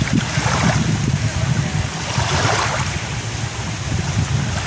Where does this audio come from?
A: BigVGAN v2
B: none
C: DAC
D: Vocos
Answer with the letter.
B